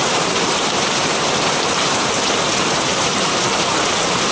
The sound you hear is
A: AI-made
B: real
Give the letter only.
A